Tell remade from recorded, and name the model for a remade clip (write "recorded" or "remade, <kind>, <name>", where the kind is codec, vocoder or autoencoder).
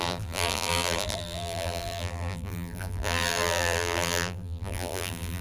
remade, vocoder, BigVGAN v2